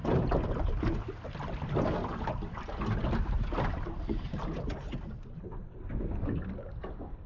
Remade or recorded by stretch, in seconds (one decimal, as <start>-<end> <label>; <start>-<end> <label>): 0.0-7.3 recorded